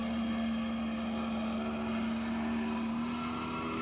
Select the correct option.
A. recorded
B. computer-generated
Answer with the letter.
A